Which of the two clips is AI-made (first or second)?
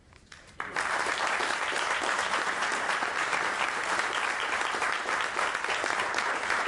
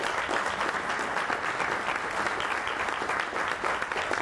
first